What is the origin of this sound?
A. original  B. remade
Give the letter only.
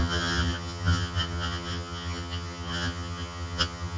B